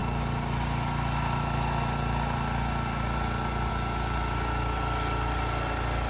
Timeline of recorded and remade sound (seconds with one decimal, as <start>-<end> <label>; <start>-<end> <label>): 0.0-6.1 recorded